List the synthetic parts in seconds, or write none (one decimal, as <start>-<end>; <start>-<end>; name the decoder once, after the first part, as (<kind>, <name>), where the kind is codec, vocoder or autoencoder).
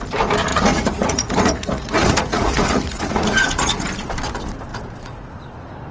0.5-4.0 (vocoder, Vocos); 4.7-5.3